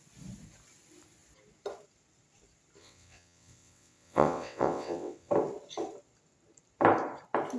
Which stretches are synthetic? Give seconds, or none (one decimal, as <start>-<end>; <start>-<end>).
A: 2.8-5.3